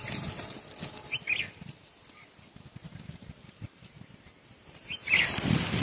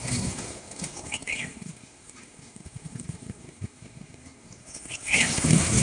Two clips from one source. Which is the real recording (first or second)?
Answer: first